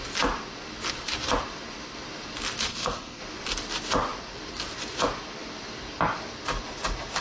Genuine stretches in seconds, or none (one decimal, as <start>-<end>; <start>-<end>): 0.0-2.7; 3.2-7.2